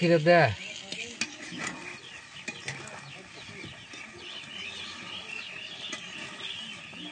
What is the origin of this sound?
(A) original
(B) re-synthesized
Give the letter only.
A